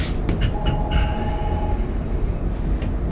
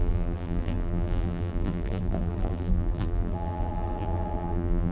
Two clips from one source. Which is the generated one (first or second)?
second